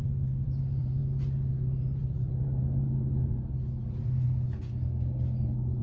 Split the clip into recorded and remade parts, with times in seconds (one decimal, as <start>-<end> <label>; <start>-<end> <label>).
0.0-1.0 remade; 1.0-1.5 recorded; 1.5-5.8 remade